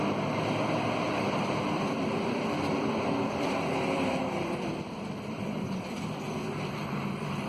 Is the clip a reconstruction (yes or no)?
yes